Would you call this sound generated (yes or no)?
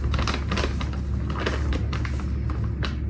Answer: no